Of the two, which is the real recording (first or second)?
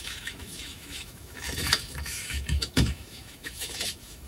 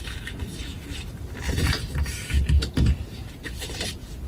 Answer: second